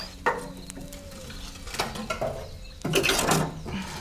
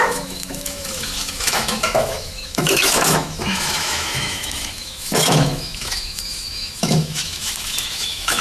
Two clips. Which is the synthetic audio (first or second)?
second